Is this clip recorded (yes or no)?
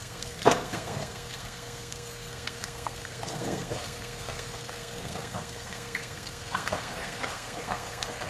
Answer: no